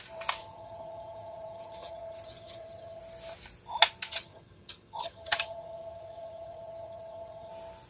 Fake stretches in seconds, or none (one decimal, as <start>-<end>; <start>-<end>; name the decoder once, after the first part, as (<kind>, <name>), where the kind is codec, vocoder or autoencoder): 0.4-3.0 (vocoder, HiFi-GAN); 4.1-7.5